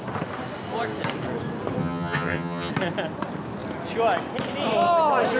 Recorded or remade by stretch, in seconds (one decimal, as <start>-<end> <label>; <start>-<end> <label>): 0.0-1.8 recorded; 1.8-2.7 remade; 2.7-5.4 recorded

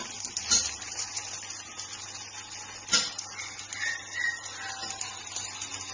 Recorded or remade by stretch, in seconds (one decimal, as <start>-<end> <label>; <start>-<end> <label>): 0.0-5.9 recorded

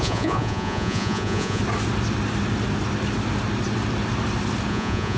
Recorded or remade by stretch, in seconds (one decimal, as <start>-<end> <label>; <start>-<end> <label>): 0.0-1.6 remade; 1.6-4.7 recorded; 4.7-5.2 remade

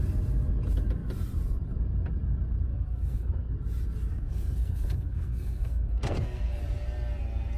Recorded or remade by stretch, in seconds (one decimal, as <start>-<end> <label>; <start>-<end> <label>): 0.0-2.7 recorded; 2.7-3.5 remade; 3.5-4.1 recorded; 4.1-6.6 remade; 6.6-7.6 recorded

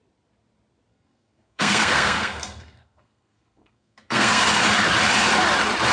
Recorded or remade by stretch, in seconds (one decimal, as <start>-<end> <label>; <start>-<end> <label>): 0.0-0.9 recorded; 0.9-4.4 remade; 4.4-5.9 recorded

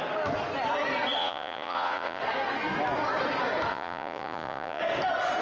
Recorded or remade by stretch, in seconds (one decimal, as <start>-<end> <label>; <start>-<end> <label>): 0.0-1.2 recorded; 1.2-2.2 remade; 2.2-3.7 recorded; 3.7-4.8 remade; 4.8-5.4 recorded